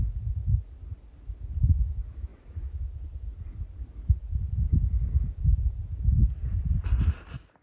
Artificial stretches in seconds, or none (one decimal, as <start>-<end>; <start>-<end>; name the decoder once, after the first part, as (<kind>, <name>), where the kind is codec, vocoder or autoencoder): none